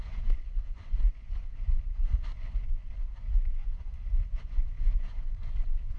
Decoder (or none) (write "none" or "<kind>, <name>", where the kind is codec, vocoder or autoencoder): vocoder, Vocos